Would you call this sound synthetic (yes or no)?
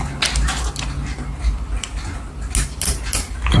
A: no